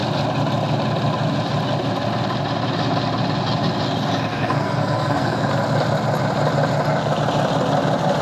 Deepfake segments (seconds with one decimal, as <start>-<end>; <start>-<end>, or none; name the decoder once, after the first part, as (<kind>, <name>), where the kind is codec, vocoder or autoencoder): 4.3-5.5 (codec, SNAC)